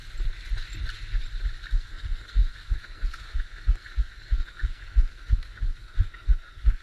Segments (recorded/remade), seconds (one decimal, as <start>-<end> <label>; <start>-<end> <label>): 0.0-1.7 recorded; 1.7-6.8 remade